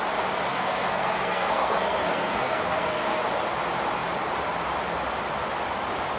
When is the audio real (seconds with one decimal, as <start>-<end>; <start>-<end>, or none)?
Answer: 0.0-0.5; 3.2-6.2